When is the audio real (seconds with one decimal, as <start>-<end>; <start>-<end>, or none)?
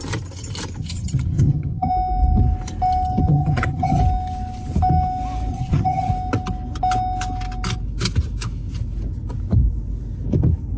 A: 0.0-0.8; 1.9-3.3; 4.0-5.5; 6.1-10.8